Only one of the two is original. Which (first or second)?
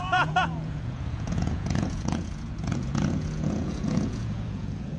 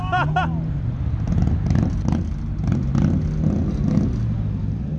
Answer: second